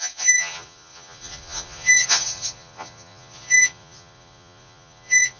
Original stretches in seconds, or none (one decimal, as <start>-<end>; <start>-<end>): none